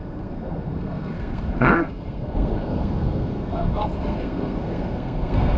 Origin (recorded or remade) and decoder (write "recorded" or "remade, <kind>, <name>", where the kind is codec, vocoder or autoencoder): remade, codec, SNAC